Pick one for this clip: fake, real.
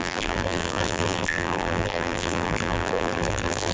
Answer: fake